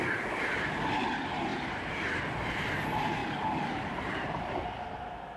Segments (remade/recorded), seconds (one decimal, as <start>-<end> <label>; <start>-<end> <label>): 0.0-3.2 recorded; 3.2-4.4 remade; 4.4-5.4 recorded